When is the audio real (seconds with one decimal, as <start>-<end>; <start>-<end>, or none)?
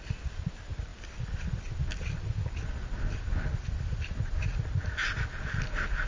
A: 0.0-6.1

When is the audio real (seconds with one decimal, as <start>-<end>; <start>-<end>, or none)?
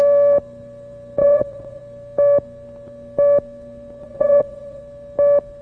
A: 0.0-1.2; 1.8-4.0; 4.8-5.6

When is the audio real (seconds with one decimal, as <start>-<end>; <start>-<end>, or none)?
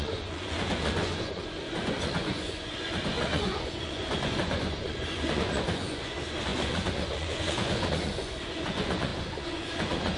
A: none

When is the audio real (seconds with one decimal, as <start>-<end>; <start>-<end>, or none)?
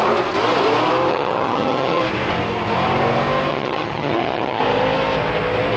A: 0.0-1.1; 2.0-3.5; 4.6-5.8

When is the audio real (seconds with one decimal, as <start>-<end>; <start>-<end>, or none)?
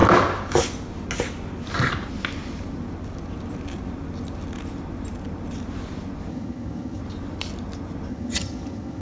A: 0.0-6.3; 7.0-8.1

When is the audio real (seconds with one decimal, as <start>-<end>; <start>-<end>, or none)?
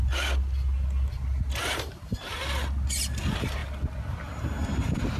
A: 0.0-1.6; 2.4-5.2